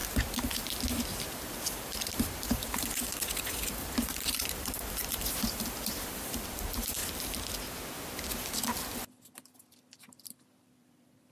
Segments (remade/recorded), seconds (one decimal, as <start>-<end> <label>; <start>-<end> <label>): 0.0-1.5 recorded; 1.5-7.0 remade; 7.0-9.7 recorded; 9.7-11.3 remade